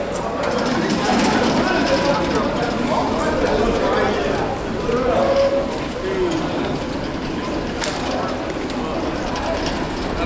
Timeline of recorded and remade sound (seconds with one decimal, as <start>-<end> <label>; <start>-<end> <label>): 0.0-10.3 recorded